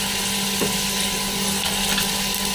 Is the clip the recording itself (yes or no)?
yes